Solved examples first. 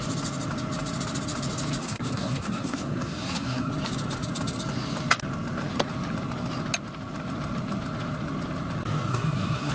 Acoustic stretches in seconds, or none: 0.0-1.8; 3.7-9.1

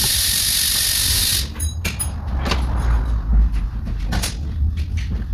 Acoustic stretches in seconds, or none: 0.0-5.3

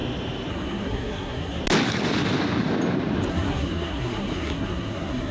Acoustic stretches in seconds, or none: 0.0-0.5; 1.6-3.3

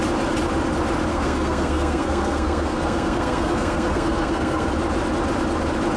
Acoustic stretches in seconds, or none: 0.0-1.1; 4.7-6.0

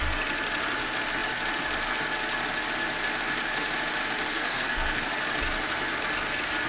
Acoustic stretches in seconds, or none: 0.0-4.3; 5.1-6.7

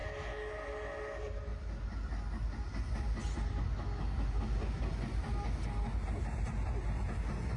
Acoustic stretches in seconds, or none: 0.0-7.6

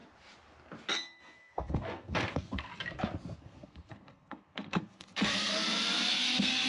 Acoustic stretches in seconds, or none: 0.0-0.9; 2.7-3.4; 5.5-6.1

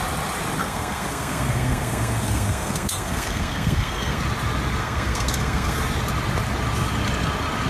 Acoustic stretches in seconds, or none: 0.0-0.6; 4.2-4.8; 5.8-7.7